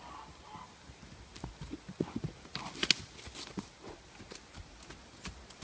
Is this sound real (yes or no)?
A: yes